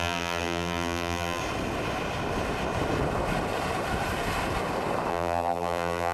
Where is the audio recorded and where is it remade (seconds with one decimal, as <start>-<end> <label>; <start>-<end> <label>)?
0.0-1.4 remade; 1.4-5.1 recorded; 5.1-6.1 remade